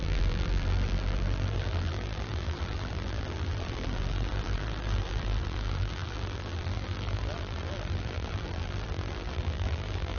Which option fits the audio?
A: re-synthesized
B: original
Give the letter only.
A